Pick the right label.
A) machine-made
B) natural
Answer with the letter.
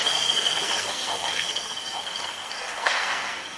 A